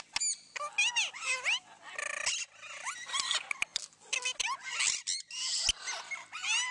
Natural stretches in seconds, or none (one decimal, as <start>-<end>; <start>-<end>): 0.0-6.7